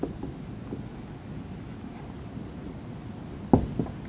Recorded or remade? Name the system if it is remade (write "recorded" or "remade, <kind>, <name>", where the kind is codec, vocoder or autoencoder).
recorded